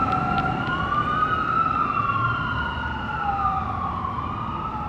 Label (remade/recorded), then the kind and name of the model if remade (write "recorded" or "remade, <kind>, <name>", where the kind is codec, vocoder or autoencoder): remade, vocoder, BigVGAN v2